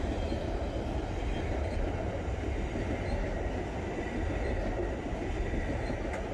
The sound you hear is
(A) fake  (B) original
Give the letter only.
B